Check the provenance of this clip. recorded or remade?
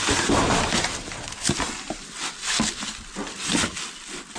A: recorded